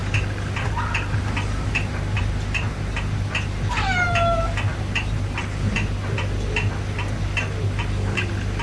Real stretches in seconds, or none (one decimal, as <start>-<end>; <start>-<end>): 0.0-8.6